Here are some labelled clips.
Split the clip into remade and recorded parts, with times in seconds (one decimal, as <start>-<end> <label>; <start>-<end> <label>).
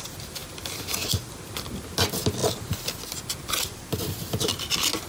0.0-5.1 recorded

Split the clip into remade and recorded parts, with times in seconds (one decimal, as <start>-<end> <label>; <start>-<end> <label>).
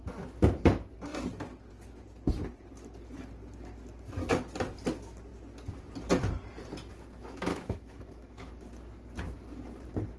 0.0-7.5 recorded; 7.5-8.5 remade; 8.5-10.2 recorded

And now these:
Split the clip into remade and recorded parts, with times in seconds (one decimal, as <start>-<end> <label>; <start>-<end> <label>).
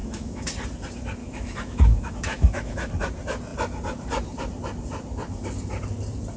0.0-0.5 remade; 0.5-1.2 recorded; 1.2-2.9 remade; 2.9-6.4 recorded